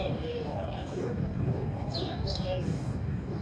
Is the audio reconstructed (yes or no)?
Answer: yes